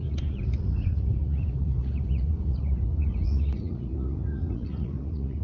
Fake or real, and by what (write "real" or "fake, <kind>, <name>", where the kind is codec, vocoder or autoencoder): fake, vocoder, Vocos